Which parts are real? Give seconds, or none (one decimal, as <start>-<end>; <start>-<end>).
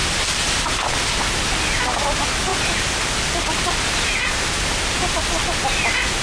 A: 0.0-6.2